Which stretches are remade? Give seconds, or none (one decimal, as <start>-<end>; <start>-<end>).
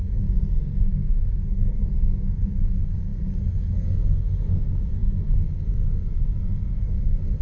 0.0-7.4